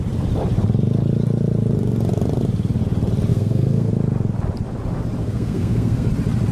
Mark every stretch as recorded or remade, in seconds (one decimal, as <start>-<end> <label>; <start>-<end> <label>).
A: 0.0-3.3 recorded; 3.3-3.9 remade; 3.9-5.2 recorded; 5.2-6.1 remade; 6.1-6.5 recorded